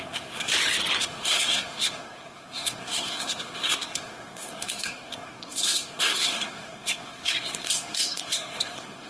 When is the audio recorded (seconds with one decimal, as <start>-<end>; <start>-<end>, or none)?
0.5-1.0